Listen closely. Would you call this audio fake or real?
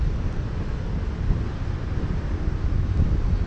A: real